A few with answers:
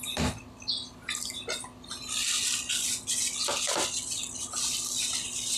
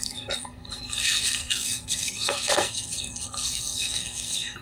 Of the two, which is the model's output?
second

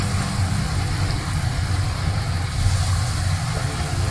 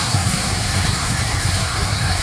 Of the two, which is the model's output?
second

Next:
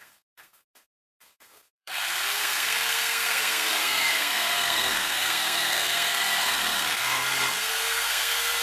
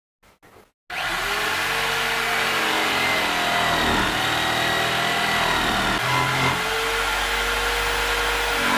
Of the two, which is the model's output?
first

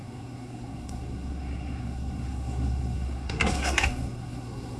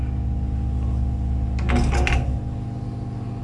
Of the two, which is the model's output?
first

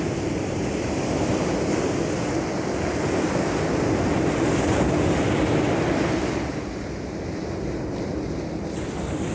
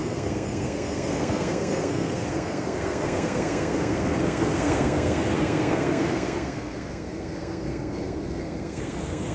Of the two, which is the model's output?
second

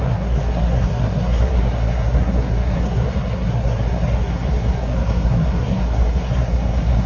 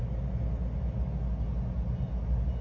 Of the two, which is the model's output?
first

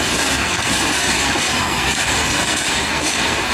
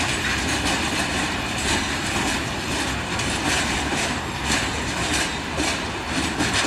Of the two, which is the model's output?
first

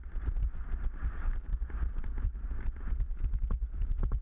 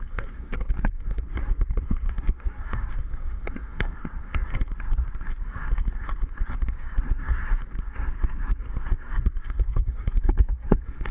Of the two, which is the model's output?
second